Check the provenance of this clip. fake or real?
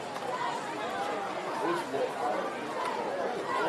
real